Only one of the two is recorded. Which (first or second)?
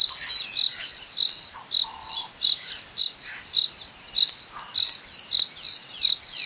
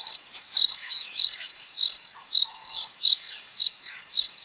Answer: first